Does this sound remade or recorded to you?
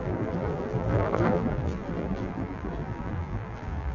remade